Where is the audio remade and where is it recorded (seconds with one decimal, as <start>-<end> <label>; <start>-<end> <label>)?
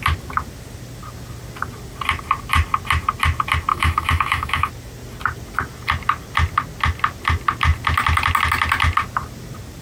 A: 0.0-3.7 recorded; 3.7-4.7 remade; 4.7-9.8 recorded